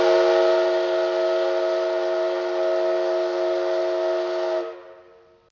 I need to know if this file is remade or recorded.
recorded